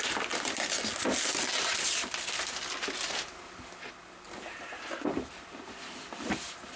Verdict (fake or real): real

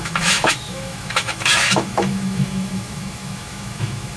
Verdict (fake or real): fake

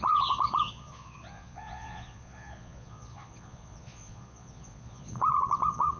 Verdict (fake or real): fake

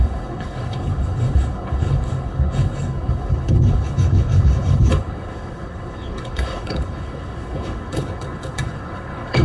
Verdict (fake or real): fake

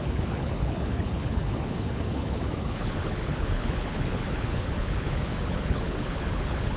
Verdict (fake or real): fake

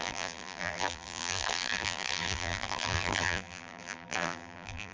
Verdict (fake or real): fake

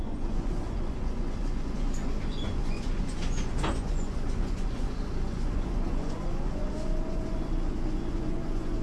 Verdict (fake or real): fake